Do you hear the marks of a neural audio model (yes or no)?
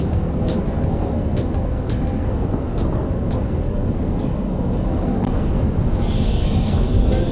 yes